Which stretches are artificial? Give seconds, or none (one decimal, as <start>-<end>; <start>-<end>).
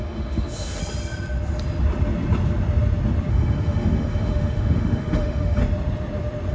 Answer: 0.0-0.8; 3.3-5.6